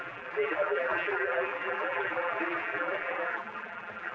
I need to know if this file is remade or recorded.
remade